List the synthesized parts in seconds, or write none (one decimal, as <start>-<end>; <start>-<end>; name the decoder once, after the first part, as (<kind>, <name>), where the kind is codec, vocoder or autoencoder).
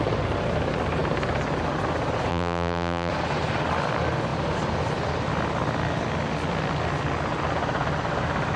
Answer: 2.3-3.1 (vocoder, BigVGAN v2)